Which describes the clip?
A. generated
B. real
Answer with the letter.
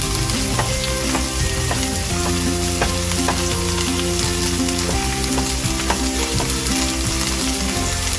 B